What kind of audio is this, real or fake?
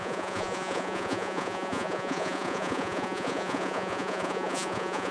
fake